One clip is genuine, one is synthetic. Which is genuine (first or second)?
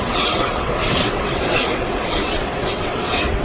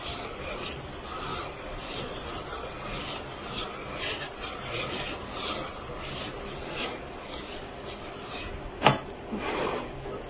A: second